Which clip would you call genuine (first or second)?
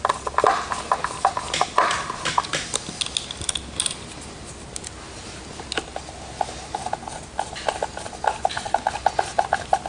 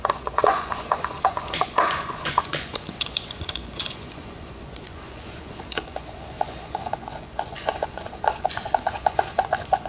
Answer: first